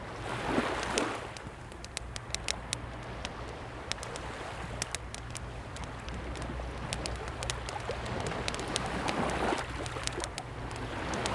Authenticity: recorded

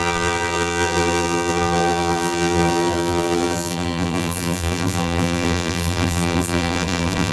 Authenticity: remade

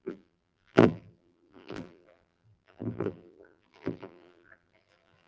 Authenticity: remade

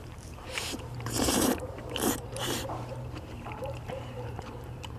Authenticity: remade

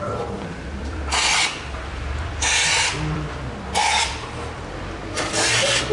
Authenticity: remade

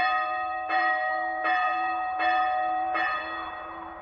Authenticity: remade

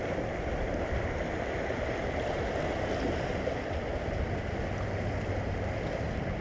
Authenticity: recorded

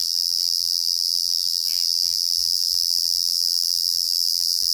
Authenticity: remade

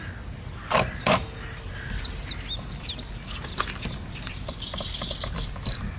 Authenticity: recorded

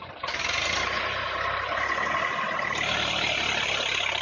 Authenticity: recorded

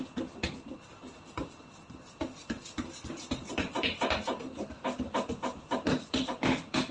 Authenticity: remade